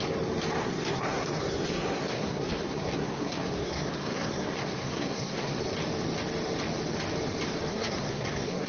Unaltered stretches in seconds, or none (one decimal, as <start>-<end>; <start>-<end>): 0.0-0.6; 5.6-7.7